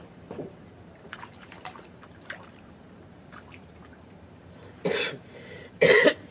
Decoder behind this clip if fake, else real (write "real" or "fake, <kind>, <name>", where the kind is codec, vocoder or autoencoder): fake, vocoder, BigVGAN v2